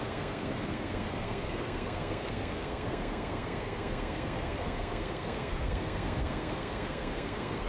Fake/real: fake